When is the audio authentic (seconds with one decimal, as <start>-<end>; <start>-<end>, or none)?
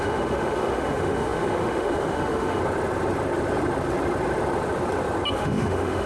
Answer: 2.6-5.3